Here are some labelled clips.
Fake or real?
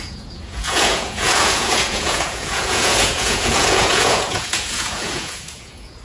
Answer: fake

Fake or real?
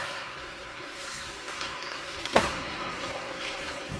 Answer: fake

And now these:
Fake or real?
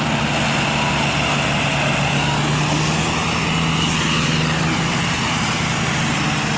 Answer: real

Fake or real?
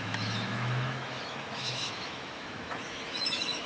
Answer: fake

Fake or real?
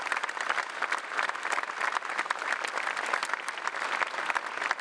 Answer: real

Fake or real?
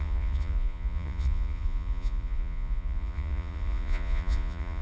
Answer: fake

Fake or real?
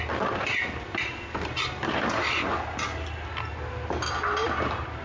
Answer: fake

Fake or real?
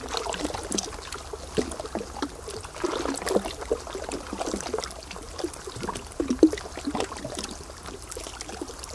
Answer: real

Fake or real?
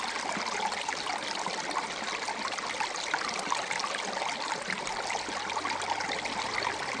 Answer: real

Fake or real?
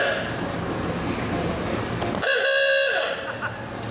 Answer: real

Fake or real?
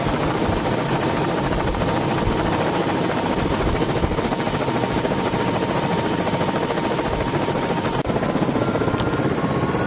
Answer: real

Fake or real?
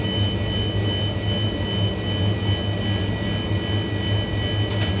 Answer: real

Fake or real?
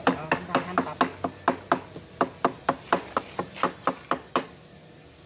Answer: real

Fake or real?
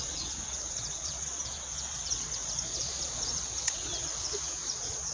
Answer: fake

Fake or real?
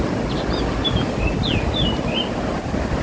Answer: real